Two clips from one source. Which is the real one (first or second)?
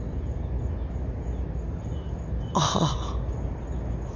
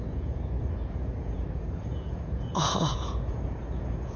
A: first